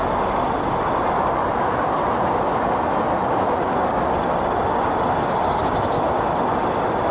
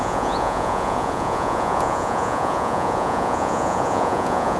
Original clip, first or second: first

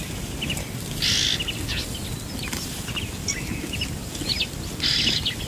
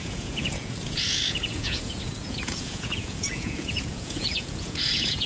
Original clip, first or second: first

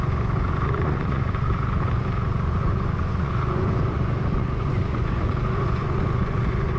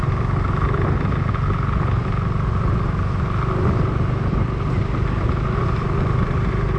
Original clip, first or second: second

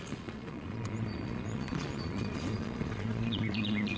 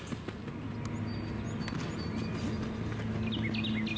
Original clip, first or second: second